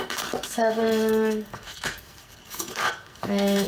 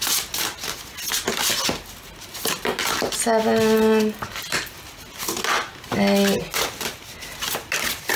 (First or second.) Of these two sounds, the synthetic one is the first